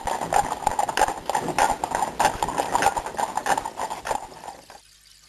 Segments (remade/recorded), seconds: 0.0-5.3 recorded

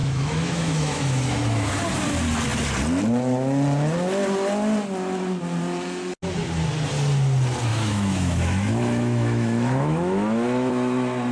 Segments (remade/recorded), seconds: 0.0-1.7 remade; 1.7-7.7 recorded; 7.7-10.7 remade; 10.7-11.3 recorded

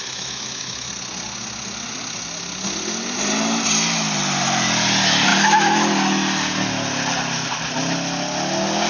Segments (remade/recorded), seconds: 0.0-0.9 remade; 0.9-8.9 recorded